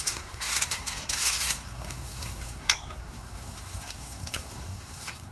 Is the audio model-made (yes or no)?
yes